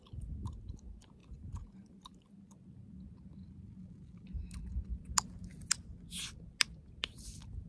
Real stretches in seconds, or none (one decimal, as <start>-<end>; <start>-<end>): 0.0-1.2; 2.3-7.7